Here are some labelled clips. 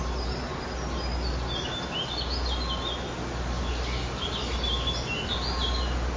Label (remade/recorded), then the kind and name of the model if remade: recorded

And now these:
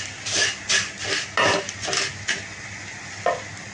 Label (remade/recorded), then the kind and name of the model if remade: recorded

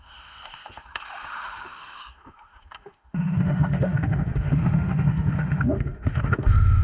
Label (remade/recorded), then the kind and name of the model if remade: remade, autoencoder, DAC-VAE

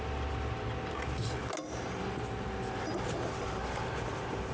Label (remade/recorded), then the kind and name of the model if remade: recorded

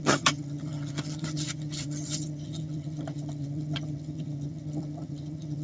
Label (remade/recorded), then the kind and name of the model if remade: remade, vocoder, HiFi-GAN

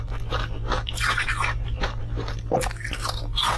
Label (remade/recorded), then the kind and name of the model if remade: recorded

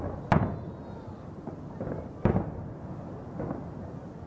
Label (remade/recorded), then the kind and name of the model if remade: recorded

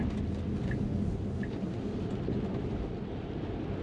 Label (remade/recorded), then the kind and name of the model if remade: recorded